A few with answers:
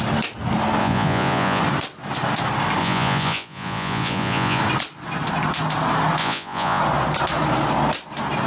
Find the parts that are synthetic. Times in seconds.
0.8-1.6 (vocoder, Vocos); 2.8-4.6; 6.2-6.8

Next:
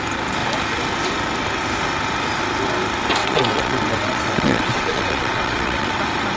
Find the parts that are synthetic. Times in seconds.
3.2-6.0 (vocoder, WaveNeXt)

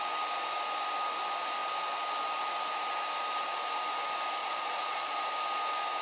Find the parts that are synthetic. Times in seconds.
4.4-5.2 (vocoder, Vocos)

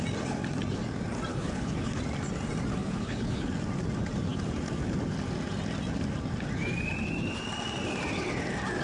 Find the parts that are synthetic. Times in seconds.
1.3-2.0 (codec, HILCodec); 2.8-3.5